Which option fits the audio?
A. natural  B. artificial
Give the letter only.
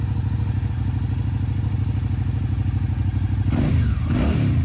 A